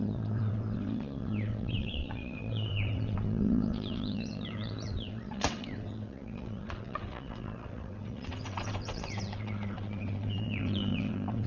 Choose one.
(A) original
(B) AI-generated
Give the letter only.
B